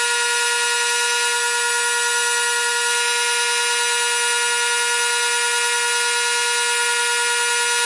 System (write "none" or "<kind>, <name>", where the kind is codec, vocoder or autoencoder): none